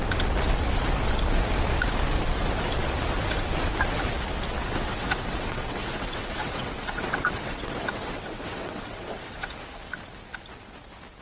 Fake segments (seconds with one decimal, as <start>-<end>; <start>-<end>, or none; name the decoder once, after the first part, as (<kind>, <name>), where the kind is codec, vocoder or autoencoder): 4.6-9.5 (vocoder, WaveNeXt)